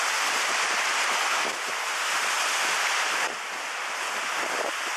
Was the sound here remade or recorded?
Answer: recorded